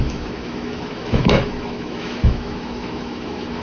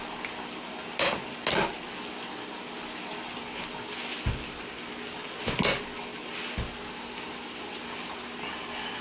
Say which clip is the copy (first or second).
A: first